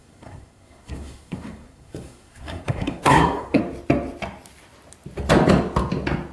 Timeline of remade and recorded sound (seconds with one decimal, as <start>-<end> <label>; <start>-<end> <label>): 0.0-3.6 remade; 3.6-6.3 recorded